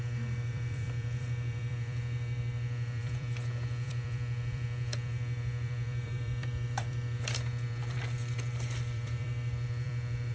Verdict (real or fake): fake